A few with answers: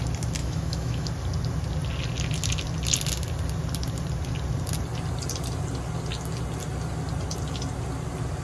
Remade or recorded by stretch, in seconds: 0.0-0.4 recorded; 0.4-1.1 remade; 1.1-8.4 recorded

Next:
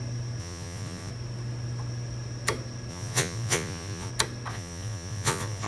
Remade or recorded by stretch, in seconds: 0.0-0.4 recorded; 0.4-1.1 remade; 1.1-2.9 recorded; 2.9-4.1 remade; 4.1-4.5 recorded; 4.5-5.7 remade

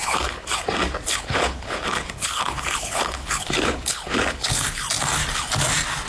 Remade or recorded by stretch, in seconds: 0.0-0.6 remade; 0.6-1.1 recorded; 1.1-4.8 remade; 4.8-6.1 recorded

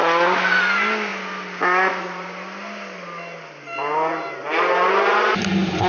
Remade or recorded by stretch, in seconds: 0.0-5.9 recorded

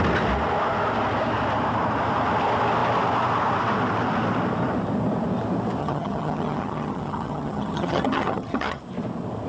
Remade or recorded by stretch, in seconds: 0.0-5.8 recorded; 5.8-8.8 remade; 8.8-9.5 recorded

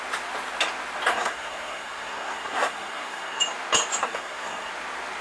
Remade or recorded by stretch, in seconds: 0.0-1.1 recorded; 1.1-3.4 remade; 3.4-4.0 recorded; 4.0-4.7 remade; 4.7-5.2 recorded

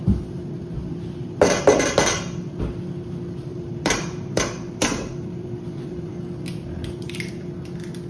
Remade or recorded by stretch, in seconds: 0.0-3.5 recorded; 3.5-6.1 remade; 6.1-6.8 recorded; 6.8-7.3 remade; 7.3-8.1 recorded

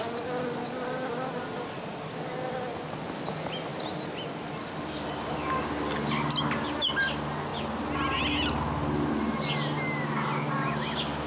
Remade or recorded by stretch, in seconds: 0.0-11.3 recorded